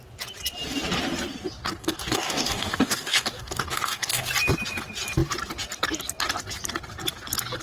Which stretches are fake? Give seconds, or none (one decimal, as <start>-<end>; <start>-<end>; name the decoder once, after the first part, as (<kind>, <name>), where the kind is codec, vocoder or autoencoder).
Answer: 1.8-4.3 (codec, DAC)